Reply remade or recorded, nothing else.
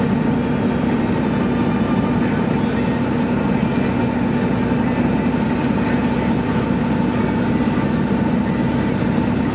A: recorded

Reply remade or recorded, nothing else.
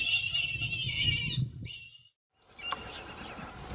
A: recorded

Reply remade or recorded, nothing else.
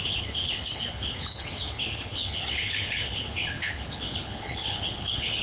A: remade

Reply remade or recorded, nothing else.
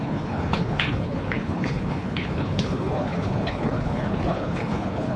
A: remade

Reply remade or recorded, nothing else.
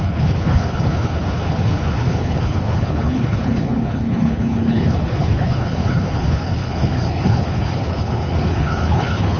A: remade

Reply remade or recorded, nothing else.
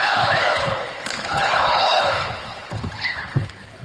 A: remade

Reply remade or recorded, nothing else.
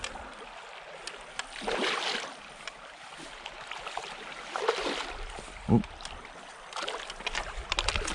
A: recorded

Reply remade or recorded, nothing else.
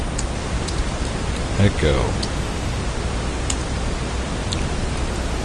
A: recorded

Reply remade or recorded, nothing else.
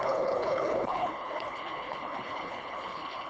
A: remade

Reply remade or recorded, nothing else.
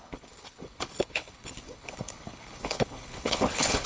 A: remade